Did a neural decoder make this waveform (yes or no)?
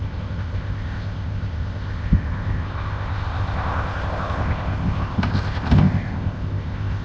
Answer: yes